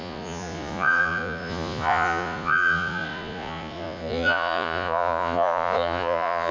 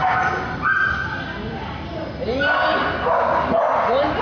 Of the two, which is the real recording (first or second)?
second